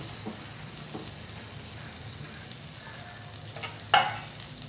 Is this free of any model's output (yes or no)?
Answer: yes